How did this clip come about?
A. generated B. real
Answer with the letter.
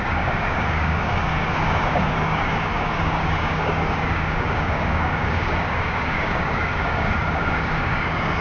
A